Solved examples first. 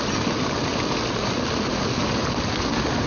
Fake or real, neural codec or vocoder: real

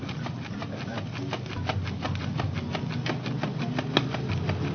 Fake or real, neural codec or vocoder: real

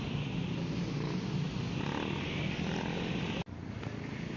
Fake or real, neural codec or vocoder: real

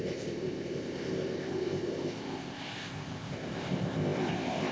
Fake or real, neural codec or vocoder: fake, codec, ZipCodec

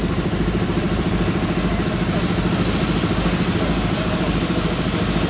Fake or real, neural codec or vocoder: real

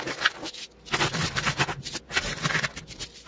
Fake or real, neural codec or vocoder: real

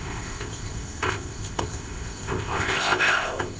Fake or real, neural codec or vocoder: fake, codec, ZipCodec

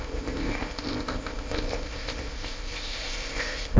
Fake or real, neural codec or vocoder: fake, codec, ZipCodec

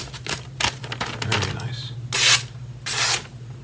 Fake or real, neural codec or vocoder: real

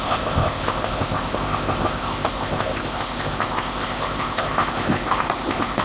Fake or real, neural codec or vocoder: fake, codec, ZipCodec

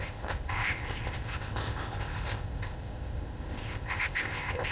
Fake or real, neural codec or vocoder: fake, codec, ZipCodec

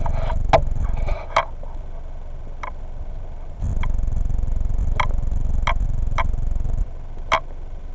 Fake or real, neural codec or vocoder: real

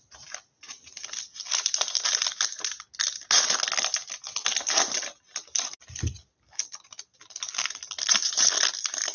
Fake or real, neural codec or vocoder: real